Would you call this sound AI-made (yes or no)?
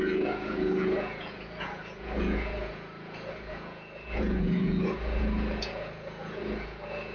yes